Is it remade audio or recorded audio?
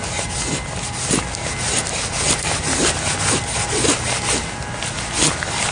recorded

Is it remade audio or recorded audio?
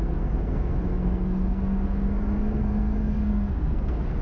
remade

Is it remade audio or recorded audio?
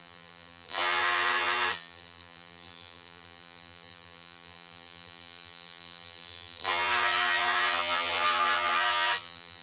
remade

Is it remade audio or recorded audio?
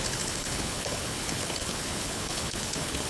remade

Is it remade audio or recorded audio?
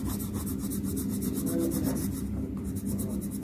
recorded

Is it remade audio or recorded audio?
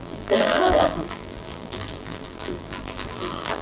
remade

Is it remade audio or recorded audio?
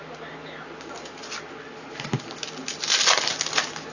recorded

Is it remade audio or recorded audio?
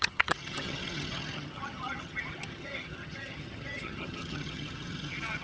remade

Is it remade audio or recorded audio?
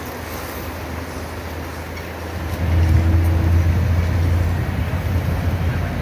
recorded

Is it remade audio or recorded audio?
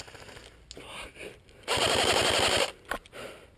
recorded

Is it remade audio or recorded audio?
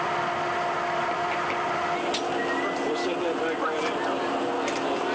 recorded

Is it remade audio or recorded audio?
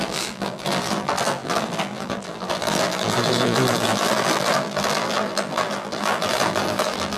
remade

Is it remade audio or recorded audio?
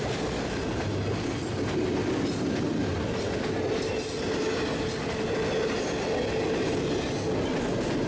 recorded